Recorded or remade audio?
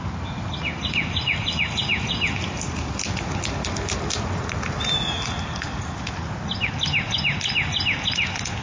recorded